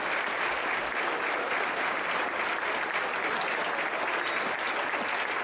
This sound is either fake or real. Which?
real